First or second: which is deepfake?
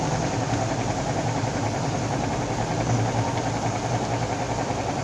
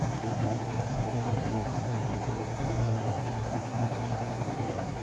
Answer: second